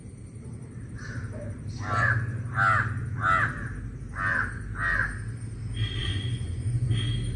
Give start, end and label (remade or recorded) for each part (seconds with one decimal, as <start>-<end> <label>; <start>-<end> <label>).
0.0-6.0 recorded; 6.0-6.9 remade; 6.9-7.4 recorded